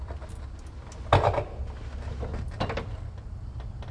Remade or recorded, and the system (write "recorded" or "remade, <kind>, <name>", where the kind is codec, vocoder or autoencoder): recorded